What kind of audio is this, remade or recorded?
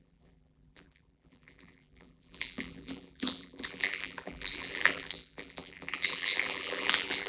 remade